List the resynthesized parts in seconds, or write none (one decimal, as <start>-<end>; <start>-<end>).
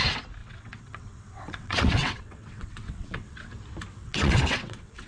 0.4-3.5; 3.9-5.1